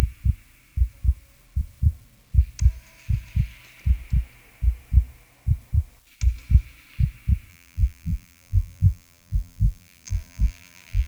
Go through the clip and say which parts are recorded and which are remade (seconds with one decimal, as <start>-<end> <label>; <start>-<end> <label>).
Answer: 0.0-7.5 recorded; 7.5-11.1 remade